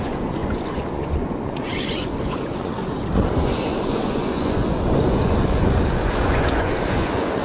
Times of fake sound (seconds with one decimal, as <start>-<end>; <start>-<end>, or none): 0.0-7.4